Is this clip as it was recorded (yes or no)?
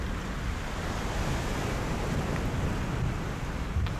yes